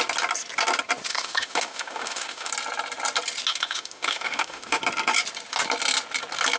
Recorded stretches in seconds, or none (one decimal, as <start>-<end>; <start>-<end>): 0.0-1.1; 2.5-3.5; 4.8-6.6